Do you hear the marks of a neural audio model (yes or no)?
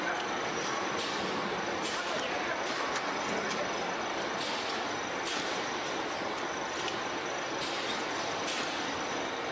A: no